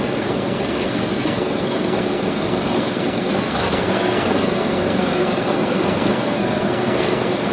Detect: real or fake fake